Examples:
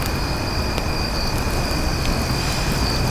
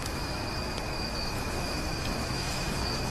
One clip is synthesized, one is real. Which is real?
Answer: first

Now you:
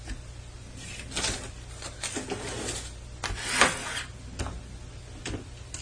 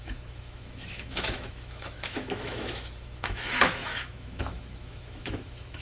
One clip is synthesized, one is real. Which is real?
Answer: first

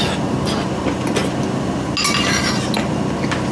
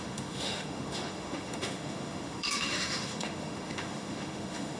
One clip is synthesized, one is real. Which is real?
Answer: first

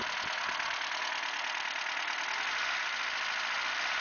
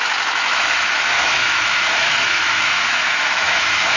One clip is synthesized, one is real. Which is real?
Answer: first